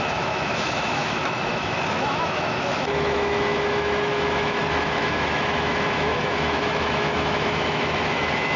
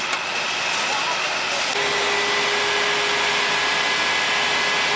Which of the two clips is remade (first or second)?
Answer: first